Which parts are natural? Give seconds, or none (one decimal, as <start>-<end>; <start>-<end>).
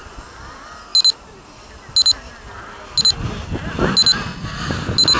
0.0-5.2